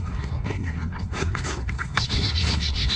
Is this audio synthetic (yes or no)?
yes